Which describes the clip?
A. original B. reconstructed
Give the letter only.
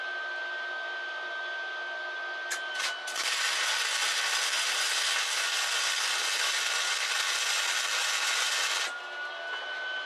A